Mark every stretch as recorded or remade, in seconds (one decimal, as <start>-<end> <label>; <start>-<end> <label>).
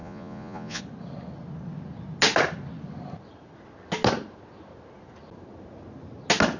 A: 0.0-0.8 remade; 0.8-6.6 recorded